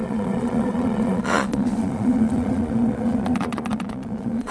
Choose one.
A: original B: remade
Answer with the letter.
B